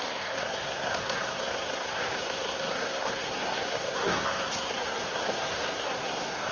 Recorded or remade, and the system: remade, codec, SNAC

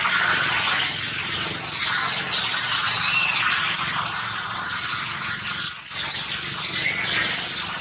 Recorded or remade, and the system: recorded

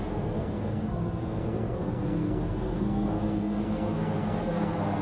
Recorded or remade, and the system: remade, codec, SNAC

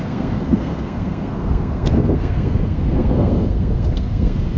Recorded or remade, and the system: remade, codec, SNAC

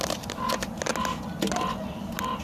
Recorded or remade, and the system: recorded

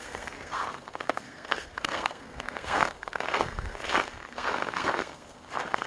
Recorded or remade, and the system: remade, codec, SNAC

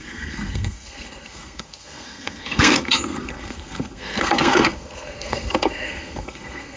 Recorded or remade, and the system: remade, codec, SNAC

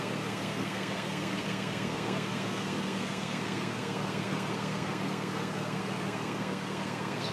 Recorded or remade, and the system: remade, codec, SNAC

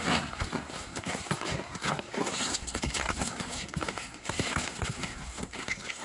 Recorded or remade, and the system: remade, codec, SNAC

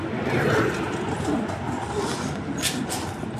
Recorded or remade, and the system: recorded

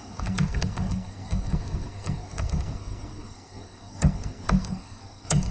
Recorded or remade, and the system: remade, codec, SNAC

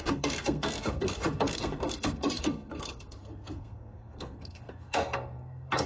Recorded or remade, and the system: remade, codec, SNAC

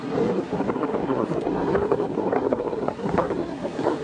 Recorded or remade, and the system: remade, codec, SNAC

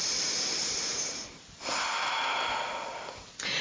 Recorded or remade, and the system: recorded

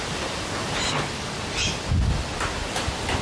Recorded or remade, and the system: recorded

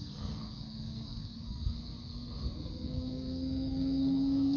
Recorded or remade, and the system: remade, codec, SNAC